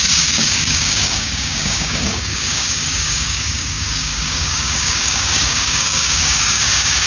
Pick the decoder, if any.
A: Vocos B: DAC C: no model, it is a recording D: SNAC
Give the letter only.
B